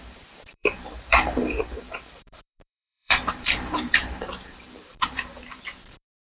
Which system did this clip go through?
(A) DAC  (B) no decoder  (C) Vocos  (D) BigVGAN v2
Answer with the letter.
D